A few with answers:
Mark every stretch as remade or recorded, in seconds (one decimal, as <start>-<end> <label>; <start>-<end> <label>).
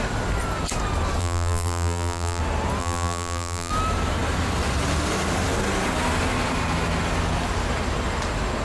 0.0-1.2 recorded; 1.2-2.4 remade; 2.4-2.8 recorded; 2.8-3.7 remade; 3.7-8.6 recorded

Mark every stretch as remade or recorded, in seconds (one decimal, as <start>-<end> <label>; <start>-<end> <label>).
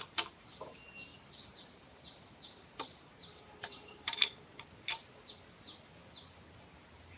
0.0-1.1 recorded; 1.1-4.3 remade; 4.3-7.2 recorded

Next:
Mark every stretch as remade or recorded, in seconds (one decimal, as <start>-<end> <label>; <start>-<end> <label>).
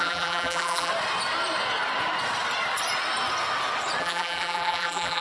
0.0-0.9 remade; 0.9-4.0 recorded; 4.0-5.2 remade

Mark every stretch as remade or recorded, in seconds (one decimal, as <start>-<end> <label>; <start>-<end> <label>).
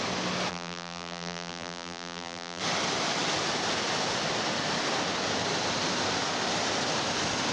0.0-0.5 recorded; 0.5-2.6 remade; 2.6-7.5 recorded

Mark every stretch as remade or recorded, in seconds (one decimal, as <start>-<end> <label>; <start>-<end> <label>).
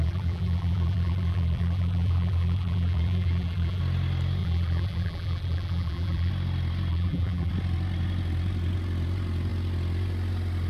0.0-3.8 remade; 3.8-4.4 recorded; 4.4-6.3 remade; 6.3-6.9 recorded; 6.9-7.5 remade; 7.5-10.7 recorded